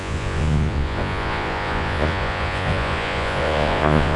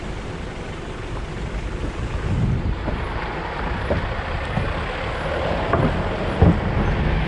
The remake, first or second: first